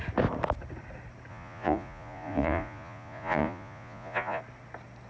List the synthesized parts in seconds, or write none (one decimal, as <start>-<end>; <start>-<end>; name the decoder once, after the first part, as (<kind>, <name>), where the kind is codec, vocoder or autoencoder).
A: 1.3-4.4 (vocoder, Vocos)